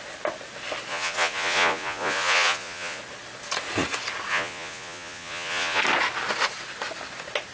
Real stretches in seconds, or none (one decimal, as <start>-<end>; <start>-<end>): 0.0-0.9; 3.0-4.3; 5.8-7.5

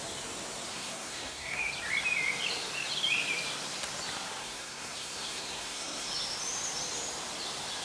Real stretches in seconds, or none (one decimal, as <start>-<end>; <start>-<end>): 0.0-0.7; 1.6-4.4; 6.1-7.8

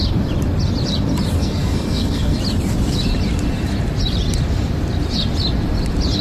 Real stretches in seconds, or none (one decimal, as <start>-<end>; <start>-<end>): 0.0-1.4; 2.4-6.2

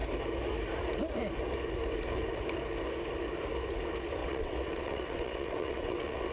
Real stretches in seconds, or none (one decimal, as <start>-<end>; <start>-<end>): 0.0-4.2

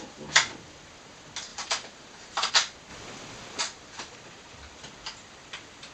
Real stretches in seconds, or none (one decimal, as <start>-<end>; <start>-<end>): 0.0-1.5; 2.5-5.9

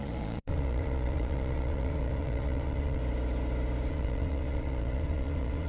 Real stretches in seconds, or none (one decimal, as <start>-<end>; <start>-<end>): 3.0-3.9

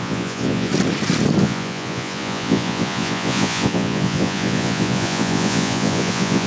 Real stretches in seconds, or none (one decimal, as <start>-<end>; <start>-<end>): 0.7-1.4